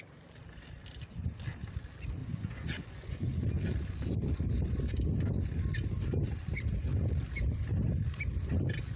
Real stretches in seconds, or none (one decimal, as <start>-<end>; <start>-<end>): 0.0-2.2; 3.3-9.0